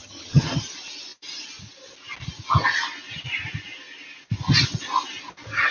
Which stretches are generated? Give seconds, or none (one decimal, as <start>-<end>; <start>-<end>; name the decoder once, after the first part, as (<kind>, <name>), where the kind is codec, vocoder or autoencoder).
0.0-0.6 (vocoder, HiFi-GAN)